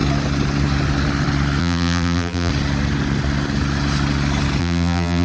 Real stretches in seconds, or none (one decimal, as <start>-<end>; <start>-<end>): 0.0-1.6; 2.5-4.6